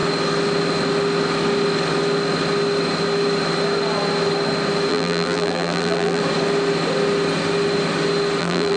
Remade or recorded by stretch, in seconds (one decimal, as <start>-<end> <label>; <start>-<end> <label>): 0.0-4.9 recorded; 4.9-6.2 remade; 6.2-8.4 recorded; 8.4-8.8 remade